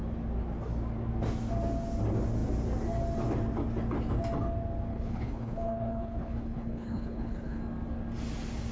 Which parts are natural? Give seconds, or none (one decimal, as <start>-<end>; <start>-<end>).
0.0-4.9; 7.6-8.7